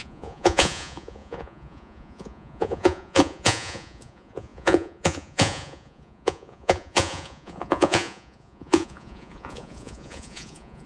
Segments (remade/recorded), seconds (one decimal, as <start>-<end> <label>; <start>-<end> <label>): 0.0-10.9 remade